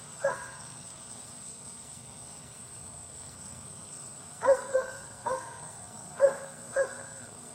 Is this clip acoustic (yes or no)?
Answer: no